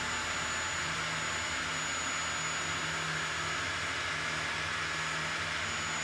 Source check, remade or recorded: recorded